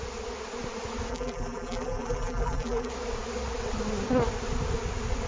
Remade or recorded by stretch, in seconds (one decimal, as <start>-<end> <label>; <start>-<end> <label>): 0.0-1.1 recorded; 1.1-2.9 remade; 2.9-5.3 recorded